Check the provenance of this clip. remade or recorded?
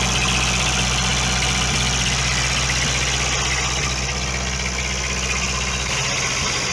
recorded